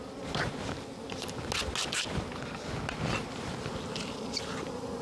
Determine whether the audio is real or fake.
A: real